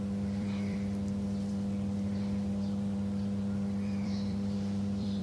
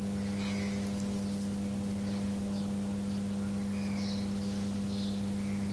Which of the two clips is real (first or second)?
second